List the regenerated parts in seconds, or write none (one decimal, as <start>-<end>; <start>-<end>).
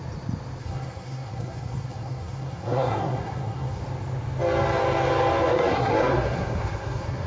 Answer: 0.6-3.8; 5.5-7.3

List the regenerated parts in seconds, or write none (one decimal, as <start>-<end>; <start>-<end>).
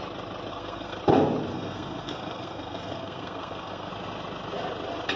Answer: 0.5-1.0; 1.5-3.9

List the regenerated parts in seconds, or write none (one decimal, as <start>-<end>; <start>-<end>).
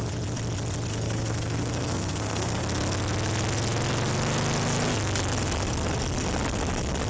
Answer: 0.9-2.6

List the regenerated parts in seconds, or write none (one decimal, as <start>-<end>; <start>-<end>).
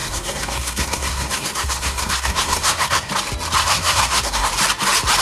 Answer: 0.0-3.1; 3.6-4.5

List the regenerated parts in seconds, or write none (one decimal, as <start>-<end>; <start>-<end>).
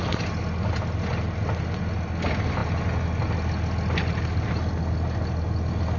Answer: none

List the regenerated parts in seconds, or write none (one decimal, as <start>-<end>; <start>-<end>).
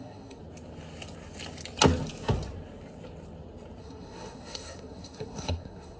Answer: 0.0-0.4; 3.8-6.0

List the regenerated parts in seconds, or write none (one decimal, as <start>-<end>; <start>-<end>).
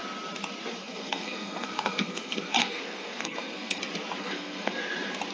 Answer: 0.8-3.8; 4.2-4.8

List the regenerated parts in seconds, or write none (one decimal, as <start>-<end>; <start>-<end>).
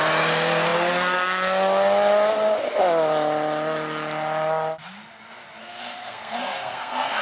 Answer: 5.6-7.2